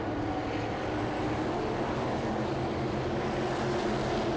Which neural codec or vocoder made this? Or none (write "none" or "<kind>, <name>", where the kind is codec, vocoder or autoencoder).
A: none